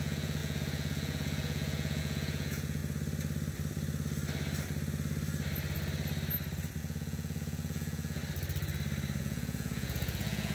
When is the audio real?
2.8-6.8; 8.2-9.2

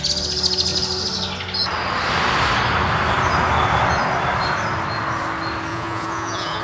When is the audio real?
0.0-5.7

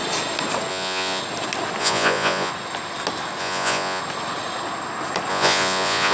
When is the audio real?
0.0-0.7; 1.2-1.8; 2.5-3.4; 4.0-5.3